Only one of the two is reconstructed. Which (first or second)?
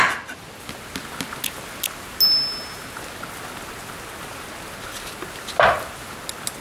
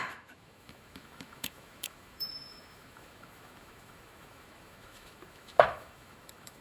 second